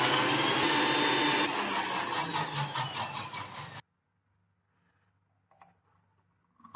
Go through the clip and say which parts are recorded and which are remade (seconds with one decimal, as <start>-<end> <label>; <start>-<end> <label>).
0.0-6.8 recorded